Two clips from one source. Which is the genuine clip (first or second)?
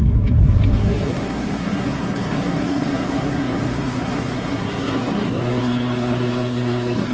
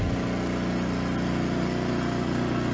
second